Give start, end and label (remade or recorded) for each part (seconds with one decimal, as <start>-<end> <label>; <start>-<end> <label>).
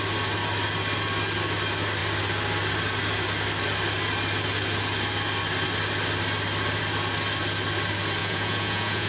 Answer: 0.0-8.2 recorded; 8.2-9.1 remade